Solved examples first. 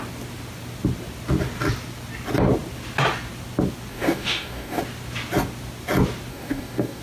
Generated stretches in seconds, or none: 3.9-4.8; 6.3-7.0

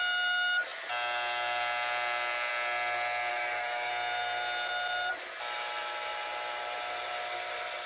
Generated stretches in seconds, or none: 3.3-3.9

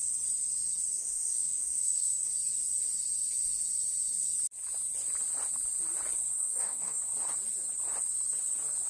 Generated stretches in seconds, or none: 0.9-2.3; 6.3-7.0

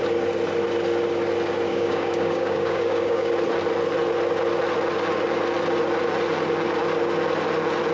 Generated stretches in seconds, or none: 1.7-3.3